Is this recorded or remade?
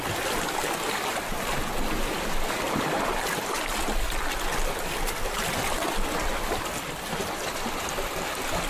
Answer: recorded